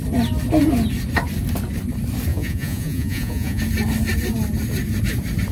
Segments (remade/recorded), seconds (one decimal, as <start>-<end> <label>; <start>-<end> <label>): 0.0-2.3 recorded; 2.3-3.6 remade; 3.6-5.5 recorded